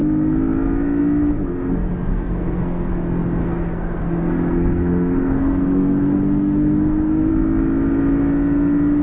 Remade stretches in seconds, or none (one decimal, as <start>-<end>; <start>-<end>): 2.1-2.9; 3.4-7.3